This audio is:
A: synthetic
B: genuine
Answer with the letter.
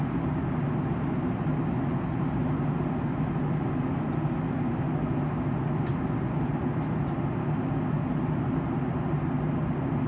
B